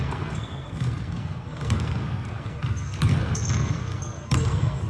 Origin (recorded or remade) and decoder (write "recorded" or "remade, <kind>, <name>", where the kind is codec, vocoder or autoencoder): remade, codec, SNAC